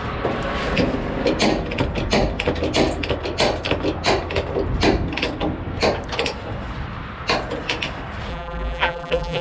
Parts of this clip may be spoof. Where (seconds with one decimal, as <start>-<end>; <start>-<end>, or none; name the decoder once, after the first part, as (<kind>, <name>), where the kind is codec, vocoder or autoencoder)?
8.3-9.4 (vocoder, BigVGAN v2)